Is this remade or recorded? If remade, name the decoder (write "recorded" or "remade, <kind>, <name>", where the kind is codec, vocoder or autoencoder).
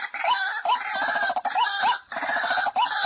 remade, vocoder, BigVGAN v2